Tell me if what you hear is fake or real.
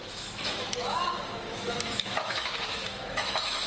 fake